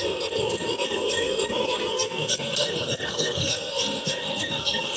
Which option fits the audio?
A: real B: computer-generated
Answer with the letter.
B